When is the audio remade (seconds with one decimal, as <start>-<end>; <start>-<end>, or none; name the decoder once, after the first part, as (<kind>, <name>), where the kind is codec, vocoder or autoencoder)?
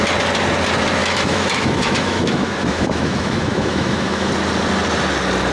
1.0-4.3 (autoencoder, DAC-VAE)